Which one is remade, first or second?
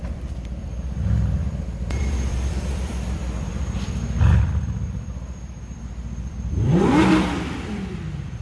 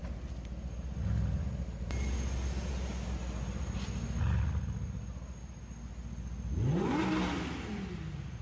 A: first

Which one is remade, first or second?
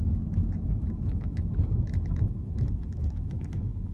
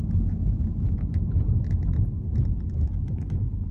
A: first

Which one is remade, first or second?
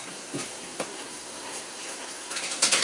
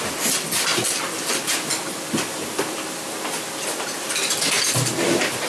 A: first